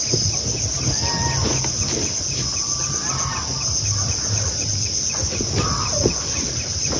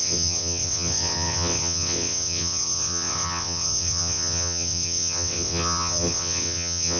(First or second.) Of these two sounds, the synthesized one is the second